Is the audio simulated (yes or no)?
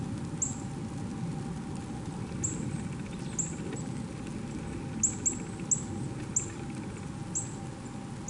no